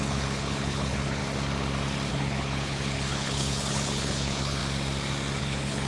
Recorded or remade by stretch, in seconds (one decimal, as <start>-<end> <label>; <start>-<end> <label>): 0.0-1.2 remade; 1.2-2.1 recorded; 2.1-4.6 remade; 4.6-5.4 recorded; 5.4-5.9 remade